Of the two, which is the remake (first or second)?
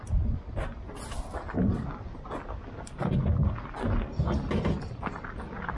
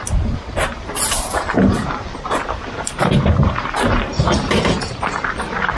second